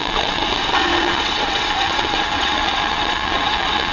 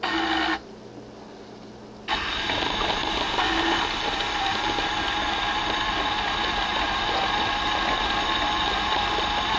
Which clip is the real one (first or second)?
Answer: second